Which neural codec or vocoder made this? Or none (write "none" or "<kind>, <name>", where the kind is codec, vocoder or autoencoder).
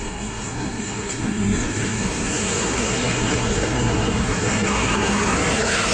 codec, SNAC